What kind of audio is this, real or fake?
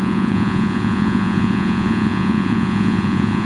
fake